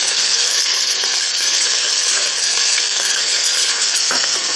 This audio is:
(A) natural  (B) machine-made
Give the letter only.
B